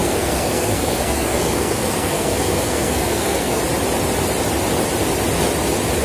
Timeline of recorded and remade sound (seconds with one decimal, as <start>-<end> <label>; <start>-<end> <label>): 0.0-3.6 remade; 3.6-6.0 recorded